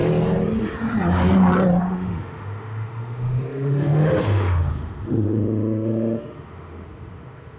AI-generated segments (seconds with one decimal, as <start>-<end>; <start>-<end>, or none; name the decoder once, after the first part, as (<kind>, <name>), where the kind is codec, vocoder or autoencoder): 1.8-7.6 (autoencoder, DAC-VAE)